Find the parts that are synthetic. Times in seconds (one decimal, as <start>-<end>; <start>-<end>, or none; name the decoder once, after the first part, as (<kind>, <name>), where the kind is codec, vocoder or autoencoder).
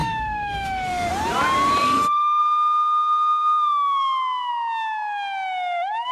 0.0-1.1 (autoencoder, DAC-VAE); 1.8-2.4